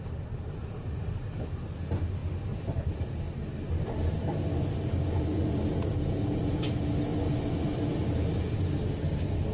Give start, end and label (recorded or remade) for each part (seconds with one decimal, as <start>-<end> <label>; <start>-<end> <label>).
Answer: 0.0-9.5 recorded